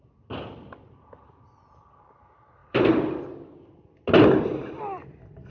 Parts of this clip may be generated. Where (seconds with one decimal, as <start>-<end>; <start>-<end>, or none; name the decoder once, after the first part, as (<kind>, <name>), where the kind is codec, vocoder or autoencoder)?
2.6-3.2 (vocoder, BigVGAN v2); 4.5-5.5